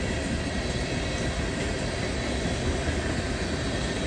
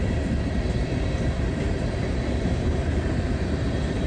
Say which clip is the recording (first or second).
first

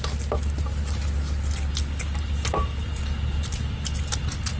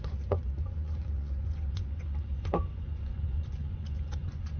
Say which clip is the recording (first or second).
first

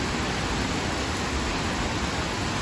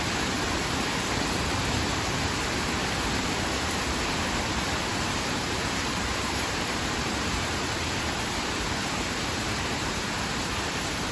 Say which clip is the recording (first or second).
first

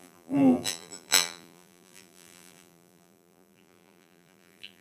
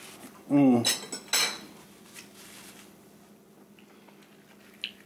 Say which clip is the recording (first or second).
second